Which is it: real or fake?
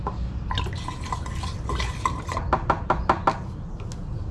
real